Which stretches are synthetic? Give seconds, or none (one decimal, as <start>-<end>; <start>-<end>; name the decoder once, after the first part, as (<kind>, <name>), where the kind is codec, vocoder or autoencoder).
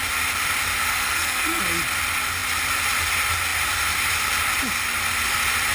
0.8-1.6 (codec, SNAC)